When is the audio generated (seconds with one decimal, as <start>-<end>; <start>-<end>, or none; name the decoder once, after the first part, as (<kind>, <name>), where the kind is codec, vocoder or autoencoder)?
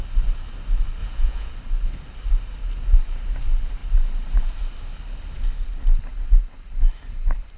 1.0-1.5 (vocoder, Vocos)